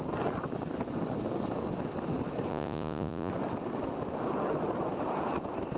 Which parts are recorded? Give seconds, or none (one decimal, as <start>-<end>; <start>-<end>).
0.0-2.5; 3.3-5.8